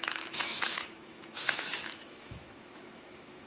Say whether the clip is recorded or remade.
remade